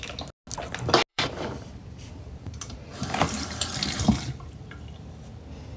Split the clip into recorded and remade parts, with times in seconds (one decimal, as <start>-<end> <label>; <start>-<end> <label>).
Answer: 0.0-1.1 recorded; 1.1-4.6 remade; 4.6-5.8 recorded